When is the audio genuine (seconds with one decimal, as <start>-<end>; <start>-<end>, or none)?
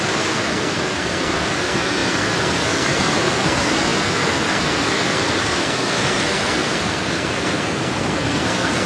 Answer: none